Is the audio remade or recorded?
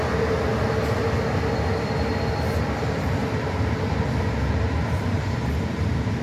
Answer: recorded